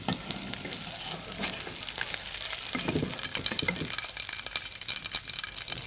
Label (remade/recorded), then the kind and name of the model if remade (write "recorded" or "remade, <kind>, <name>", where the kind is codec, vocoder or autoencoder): recorded